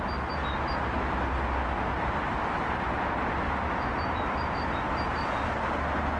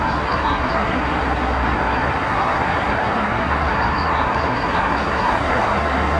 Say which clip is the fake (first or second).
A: second